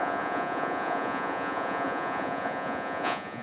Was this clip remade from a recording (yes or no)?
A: yes